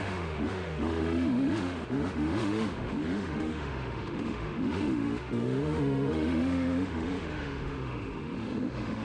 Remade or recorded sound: remade